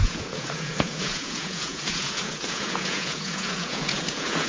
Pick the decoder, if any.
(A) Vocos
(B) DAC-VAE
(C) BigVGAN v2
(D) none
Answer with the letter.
A